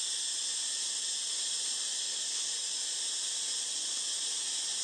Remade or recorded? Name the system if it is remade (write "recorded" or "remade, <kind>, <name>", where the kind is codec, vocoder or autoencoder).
recorded